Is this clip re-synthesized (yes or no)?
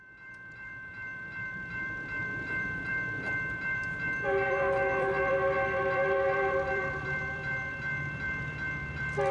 yes